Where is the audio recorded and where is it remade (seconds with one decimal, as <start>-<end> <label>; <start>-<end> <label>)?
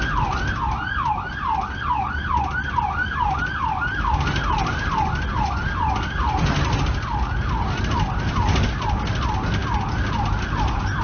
0.0-11.0 recorded